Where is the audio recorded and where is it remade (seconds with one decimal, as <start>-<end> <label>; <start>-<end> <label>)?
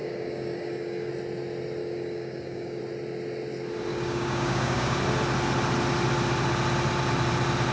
0.0-1.1 remade; 1.1-1.8 recorded; 1.8-2.8 remade; 2.8-3.9 recorded; 3.9-5.0 remade; 5.0-7.7 recorded